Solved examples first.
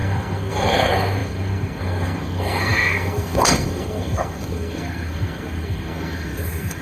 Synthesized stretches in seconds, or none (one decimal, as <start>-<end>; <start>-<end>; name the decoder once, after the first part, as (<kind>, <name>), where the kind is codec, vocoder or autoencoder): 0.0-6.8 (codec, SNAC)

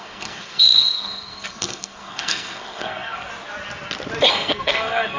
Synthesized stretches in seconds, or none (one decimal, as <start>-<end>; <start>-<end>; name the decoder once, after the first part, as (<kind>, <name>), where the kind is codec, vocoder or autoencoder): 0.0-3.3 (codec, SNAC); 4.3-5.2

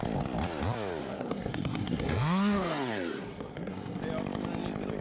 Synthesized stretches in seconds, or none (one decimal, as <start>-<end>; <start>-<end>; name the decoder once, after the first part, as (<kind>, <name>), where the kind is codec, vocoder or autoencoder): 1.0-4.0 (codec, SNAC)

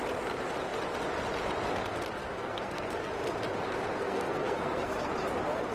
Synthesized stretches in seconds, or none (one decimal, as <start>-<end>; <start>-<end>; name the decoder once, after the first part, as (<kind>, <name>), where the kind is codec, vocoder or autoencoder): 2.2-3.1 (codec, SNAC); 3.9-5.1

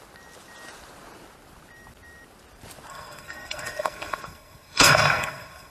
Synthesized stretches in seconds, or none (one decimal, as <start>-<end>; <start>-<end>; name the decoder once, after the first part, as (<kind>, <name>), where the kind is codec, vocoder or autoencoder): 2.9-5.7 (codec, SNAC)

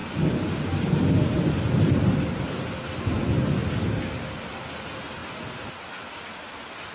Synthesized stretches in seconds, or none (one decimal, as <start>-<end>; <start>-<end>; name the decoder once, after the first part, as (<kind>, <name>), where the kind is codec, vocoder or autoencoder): none

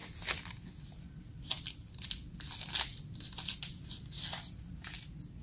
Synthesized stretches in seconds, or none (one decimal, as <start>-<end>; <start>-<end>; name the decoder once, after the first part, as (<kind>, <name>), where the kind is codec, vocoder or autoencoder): none